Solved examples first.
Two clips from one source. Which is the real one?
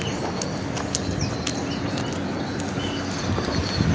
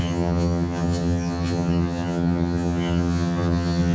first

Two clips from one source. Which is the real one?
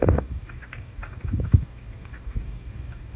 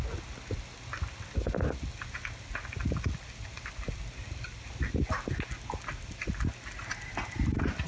second